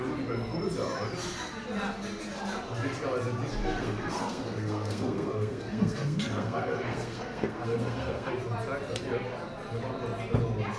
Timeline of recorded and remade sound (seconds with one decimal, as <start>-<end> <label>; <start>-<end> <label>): 0.0-3.6 recorded; 3.6-8.3 remade; 8.3-10.8 recorded